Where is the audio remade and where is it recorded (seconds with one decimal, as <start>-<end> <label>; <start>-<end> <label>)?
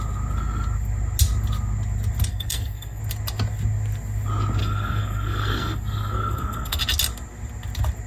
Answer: 0.0-2.3 recorded; 2.3-3.0 remade; 3.0-4.6 recorded; 4.6-6.8 remade; 6.8-8.1 recorded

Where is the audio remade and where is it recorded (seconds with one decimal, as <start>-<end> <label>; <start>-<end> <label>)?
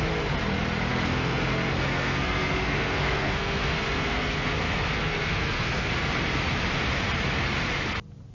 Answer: 0.0-0.9 recorded; 0.9-5.9 remade; 5.9-8.3 recorded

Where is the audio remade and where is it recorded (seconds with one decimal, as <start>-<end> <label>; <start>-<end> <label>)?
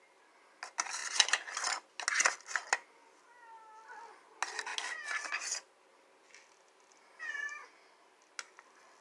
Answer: 0.0-9.0 recorded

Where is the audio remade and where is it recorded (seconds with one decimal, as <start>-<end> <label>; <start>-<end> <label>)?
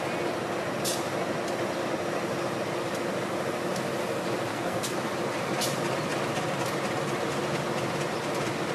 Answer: 0.0-4.5 recorded; 4.5-5.0 remade; 5.0-8.7 recorded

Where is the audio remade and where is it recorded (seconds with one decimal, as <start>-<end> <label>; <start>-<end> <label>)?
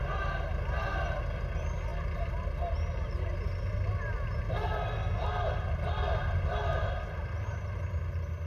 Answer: 0.0-8.5 recorded